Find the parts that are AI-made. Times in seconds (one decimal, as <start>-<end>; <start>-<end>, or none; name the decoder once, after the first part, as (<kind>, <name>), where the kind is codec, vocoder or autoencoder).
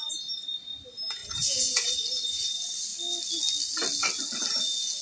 1.2-2.0 (vocoder, Vocos)